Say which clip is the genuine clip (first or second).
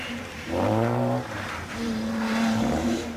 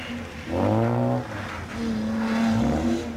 second